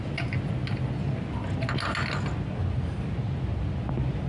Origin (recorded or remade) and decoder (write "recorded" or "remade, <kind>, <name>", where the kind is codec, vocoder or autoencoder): recorded